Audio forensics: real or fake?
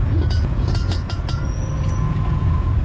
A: fake